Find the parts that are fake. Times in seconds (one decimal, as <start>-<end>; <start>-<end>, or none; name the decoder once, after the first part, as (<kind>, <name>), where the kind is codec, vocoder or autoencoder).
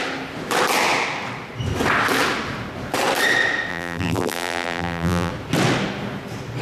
3.7-5.3 (vocoder, BigVGAN v2)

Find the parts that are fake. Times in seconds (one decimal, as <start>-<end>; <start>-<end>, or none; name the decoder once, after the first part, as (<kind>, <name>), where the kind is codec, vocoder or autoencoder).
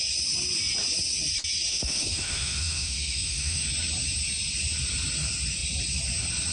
1.7-3.7 (autoencoder, DAC-VAE)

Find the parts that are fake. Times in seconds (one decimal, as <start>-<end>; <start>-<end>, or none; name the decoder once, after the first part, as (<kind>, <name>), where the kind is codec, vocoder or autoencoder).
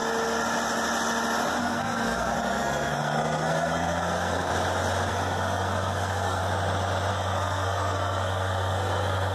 1.6-4.5 (codec, SNAC); 5.1-6.4; 7.1-9.3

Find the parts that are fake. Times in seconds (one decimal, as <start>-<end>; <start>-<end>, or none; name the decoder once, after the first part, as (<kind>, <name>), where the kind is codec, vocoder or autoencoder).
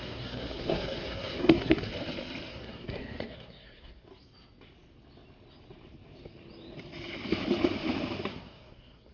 0.0-1.9 (codec, SNAC); 2.5-4.1; 8.3-9.1